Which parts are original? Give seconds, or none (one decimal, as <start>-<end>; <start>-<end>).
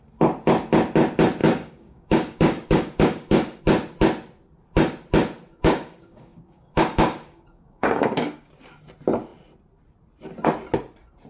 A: 0.0-1.4; 3.6-5.5; 8.5-11.3